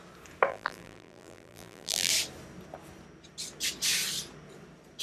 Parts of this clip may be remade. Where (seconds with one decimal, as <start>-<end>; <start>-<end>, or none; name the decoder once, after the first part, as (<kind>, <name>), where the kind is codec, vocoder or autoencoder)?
0.5-2.1 (vocoder, BigVGAN v2)